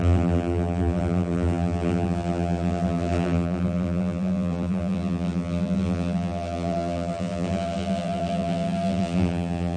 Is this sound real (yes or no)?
no